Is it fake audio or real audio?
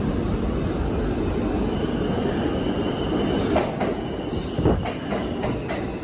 real